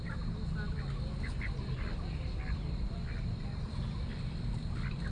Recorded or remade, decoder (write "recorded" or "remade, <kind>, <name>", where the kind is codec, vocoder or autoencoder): recorded